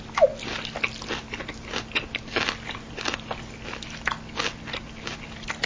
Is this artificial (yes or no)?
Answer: no